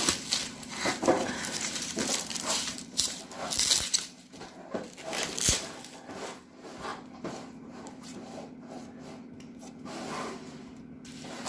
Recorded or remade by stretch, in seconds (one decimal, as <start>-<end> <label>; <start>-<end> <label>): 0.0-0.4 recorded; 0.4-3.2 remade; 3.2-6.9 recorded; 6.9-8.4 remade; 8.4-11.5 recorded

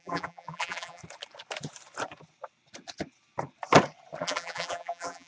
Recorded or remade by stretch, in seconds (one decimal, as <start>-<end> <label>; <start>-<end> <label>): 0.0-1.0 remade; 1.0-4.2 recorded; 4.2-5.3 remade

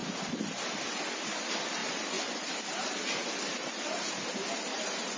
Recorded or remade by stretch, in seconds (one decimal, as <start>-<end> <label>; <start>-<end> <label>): 0.0-5.2 recorded